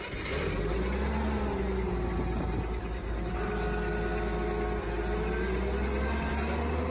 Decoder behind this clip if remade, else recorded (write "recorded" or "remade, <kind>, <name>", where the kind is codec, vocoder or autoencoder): recorded